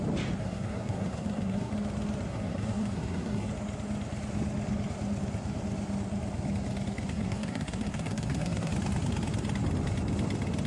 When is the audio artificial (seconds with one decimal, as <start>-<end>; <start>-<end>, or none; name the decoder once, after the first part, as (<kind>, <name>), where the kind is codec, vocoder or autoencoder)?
0.4-1.7 (codec, SNAC); 2.3-3.5; 7.1-8.7